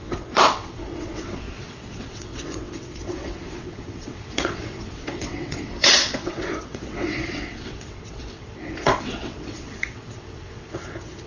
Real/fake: fake